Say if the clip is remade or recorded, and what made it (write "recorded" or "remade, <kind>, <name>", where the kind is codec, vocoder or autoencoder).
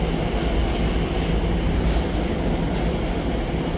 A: recorded